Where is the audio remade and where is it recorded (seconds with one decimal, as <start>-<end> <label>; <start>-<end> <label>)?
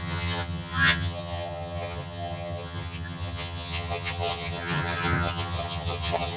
0.0-6.4 remade